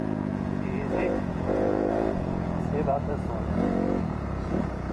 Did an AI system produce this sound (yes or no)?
yes